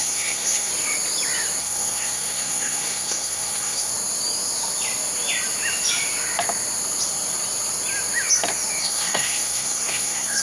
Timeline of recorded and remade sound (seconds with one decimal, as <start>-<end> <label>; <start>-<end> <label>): 0.0-0.7 remade; 0.7-1.6 recorded; 1.6-3.9 remade; 3.9-8.8 recorded; 8.8-10.4 remade